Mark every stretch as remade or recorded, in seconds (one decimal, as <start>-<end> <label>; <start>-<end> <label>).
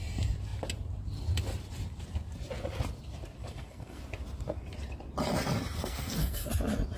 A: 0.0-3.4 recorded; 3.4-4.0 remade; 4.0-5.8 recorded; 5.8-6.5 remade; 6.5-7.0 recorded